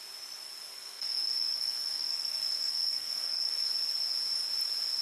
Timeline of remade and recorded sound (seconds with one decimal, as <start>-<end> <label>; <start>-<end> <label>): 0.0-0.7 recorded; 0.7-3.7 remade; 3.7-5.0 recorded